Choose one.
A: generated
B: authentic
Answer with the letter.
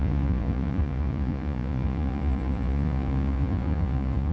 A